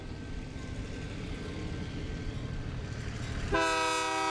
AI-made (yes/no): no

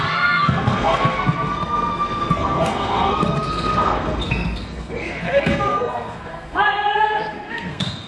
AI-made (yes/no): yes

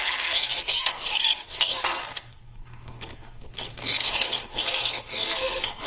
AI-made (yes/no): yes